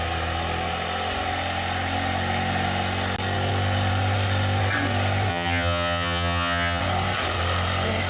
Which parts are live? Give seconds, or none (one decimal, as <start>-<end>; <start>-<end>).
0.0-5.3; 6.8-8.1